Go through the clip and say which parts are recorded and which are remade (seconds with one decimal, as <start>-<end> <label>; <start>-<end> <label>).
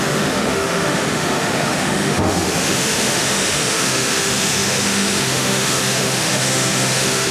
0.0-7.3 remade